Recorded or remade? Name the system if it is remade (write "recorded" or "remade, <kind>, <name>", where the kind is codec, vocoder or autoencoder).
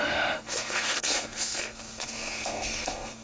remade, codec, SNAC